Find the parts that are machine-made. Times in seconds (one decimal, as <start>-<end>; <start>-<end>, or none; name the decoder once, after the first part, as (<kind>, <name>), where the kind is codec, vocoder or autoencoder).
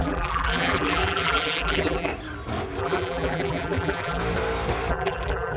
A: 0.0-2.1 (vocoder, BigVGAN v2); 2.8-4.2; 4.9-5.6